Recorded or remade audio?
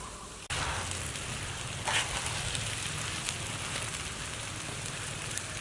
recorded